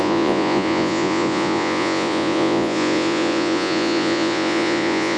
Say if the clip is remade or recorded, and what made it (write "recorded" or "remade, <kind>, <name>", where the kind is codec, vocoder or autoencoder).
remade, vocoder, Vocos